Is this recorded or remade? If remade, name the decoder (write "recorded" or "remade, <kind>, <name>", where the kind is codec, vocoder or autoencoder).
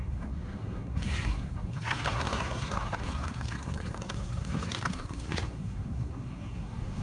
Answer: remade, codec, SNAC